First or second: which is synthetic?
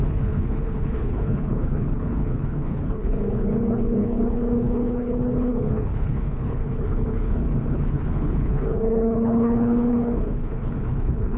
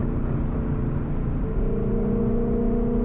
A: first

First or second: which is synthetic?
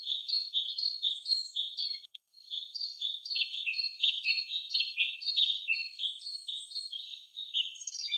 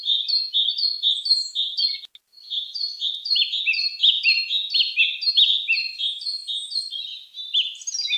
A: first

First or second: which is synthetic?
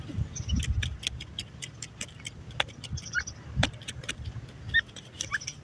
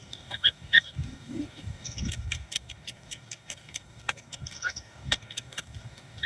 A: second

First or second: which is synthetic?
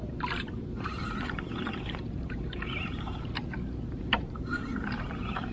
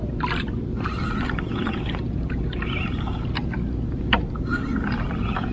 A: first